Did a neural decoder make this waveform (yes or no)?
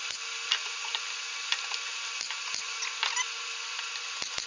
no